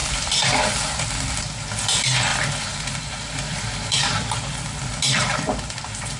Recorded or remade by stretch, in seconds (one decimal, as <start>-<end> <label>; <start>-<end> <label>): 0.0-0.7 remade; 0.7-2.3 recorded; 2.3-6.2 remade